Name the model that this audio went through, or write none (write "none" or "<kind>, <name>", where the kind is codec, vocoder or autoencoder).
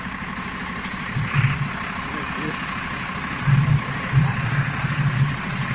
none